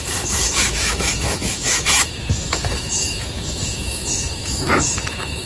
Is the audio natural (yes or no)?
no